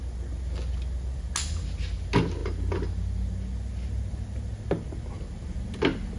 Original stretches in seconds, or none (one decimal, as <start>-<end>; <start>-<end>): 0.0-6.2